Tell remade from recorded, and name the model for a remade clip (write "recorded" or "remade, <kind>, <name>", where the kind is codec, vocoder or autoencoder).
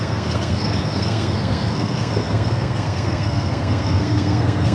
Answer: remade, codec, SNAC